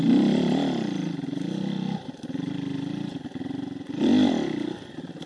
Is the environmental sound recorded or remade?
recorded